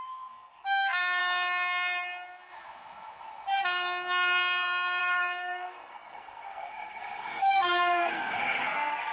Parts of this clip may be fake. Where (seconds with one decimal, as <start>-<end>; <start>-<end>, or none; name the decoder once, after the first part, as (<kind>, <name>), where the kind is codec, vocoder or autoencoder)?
0.0-1.2 (codec, SNAC); 5.0-9.1